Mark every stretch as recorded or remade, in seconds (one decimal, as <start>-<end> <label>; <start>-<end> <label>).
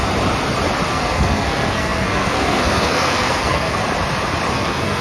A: 0.0-0.9 recorded; 0.9-3.8 remade; 3.8-4.5 recorded; 4.5-5.0 remade